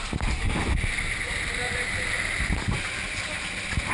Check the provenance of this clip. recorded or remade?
recorded